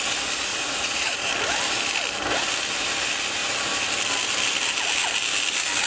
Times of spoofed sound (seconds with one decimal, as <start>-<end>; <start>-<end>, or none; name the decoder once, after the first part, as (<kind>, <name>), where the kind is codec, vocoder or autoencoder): 0.5-1.3 (vocoder, Vocos)